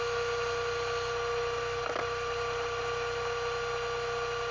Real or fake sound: real